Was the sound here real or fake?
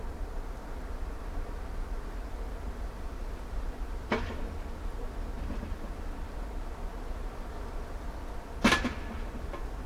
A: real